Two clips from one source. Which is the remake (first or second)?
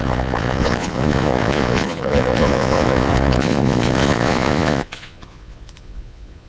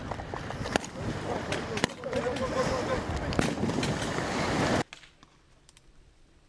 first